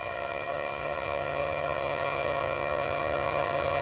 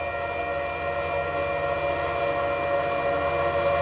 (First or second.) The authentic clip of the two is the second